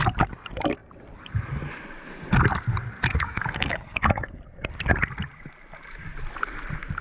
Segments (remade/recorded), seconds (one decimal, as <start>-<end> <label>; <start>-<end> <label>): 0.0-3.1 recorded; 3.1-4.4 remade; 4.4-7.0 recorded